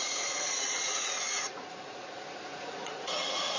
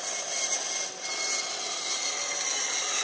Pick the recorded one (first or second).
second